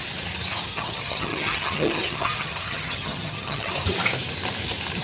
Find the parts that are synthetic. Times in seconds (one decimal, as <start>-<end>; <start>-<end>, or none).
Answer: 0.7-3.7